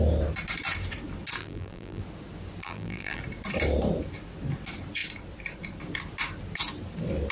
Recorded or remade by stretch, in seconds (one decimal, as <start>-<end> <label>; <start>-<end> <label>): 0.0-1.4 recorded; 1.4-2.0 remade; 2.0-2.6 recorded; 2.6-3.2 remade; 3.2-7.3 recorded